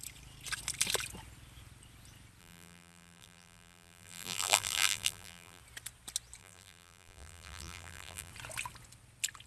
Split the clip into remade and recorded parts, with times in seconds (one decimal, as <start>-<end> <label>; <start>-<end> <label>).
0.0-2.4 recorded; 2.4-5.6 remade; 5.6-6.4 recorded; 6.4-8.3 remade; 8.3-9.5 recorded